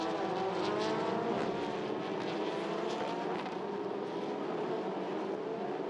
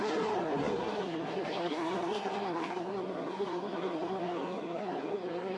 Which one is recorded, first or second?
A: first